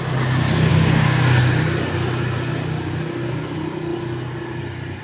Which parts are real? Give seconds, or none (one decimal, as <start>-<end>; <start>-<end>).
0.0-0.7; 1.4-5.0